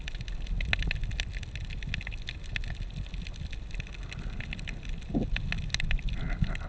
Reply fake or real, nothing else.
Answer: real